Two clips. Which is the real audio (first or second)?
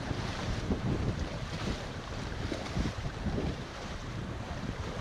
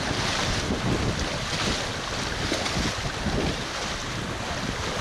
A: second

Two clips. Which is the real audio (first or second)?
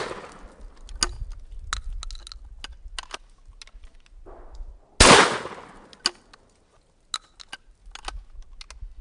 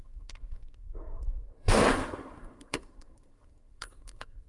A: first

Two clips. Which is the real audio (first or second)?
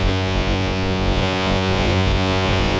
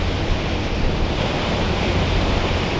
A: second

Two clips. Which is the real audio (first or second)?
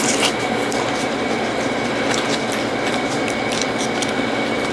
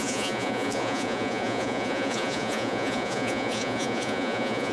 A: first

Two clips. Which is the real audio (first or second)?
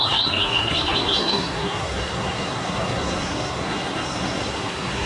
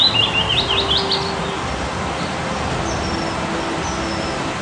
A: second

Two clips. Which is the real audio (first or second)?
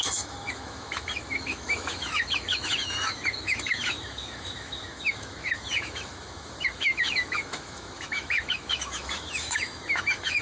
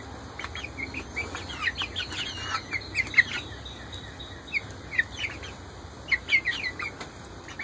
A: second